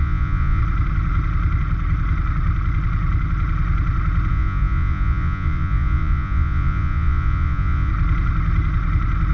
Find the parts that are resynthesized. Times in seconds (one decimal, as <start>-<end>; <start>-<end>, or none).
0.0-0.6; 4.3-7.9